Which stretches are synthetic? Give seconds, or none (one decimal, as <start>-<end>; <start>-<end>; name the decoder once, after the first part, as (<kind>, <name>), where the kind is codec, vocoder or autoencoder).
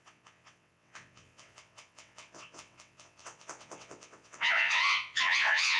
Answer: 0.0-5.8 (vocoder, WaveNeXt)